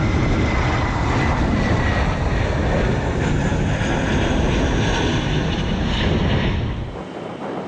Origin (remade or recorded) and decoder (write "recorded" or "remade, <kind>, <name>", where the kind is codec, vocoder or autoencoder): recorded